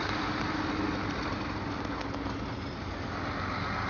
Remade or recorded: recorded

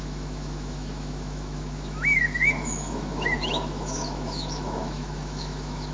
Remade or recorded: remade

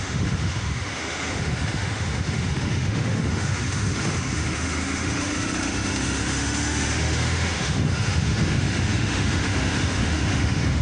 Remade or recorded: remade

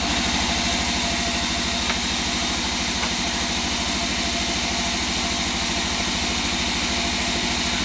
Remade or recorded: recorded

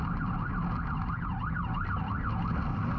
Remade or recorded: recorded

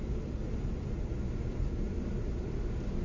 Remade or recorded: recorded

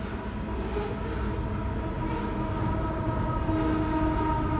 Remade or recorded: recorded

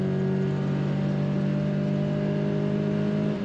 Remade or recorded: recorded